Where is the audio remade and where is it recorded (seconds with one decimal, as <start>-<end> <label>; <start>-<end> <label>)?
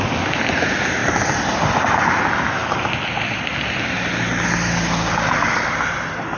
0.0-1.0 recorded; 1.0-2.2 remade; 2.2-6.4 recorded